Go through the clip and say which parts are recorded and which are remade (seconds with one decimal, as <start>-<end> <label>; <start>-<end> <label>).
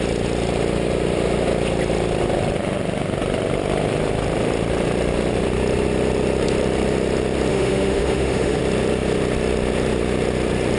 0.0-7.5 recorded; 7.5-8.6 remade; 8.6-10.8 recorded